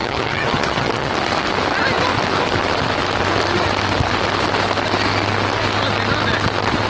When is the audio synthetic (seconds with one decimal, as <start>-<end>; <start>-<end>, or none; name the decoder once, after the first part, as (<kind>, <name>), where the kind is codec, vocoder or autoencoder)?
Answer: 0.0-1.1 (vocoder, HiFi-GAN)